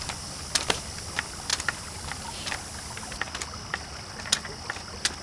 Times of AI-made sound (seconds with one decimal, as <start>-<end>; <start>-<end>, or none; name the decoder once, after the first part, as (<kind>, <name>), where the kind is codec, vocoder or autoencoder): none